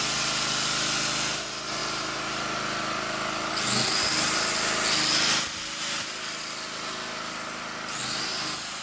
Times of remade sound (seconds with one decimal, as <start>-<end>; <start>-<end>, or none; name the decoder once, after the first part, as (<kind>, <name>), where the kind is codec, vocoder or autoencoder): none